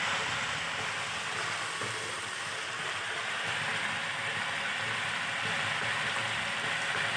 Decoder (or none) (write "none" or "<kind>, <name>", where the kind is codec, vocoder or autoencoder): none